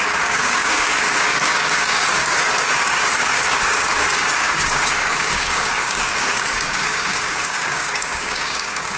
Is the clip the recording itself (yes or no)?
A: no